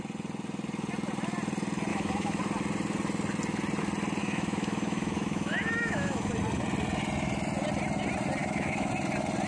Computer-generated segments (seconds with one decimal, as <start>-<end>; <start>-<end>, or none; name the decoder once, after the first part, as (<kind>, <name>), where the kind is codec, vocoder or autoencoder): 1.9-2.4 (autoencoder, DAC-VAE); 4.2-6.3; 8.4-8.9